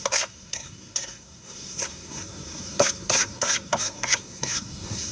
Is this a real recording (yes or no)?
no